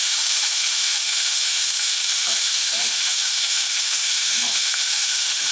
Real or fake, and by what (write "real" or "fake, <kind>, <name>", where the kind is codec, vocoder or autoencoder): fake, autoencoder, DAC-VAE